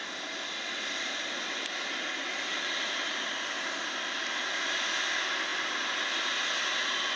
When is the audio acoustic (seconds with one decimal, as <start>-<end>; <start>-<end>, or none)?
0.0-7.2

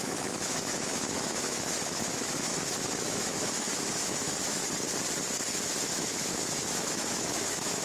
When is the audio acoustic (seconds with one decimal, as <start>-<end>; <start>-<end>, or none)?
2.5-3.0; 4.6-5.8

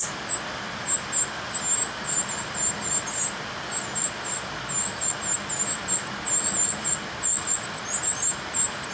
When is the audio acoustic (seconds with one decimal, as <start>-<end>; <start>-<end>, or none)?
0.0-8.9

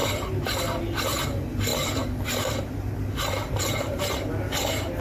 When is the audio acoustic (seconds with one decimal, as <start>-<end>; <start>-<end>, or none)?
0.0-5.0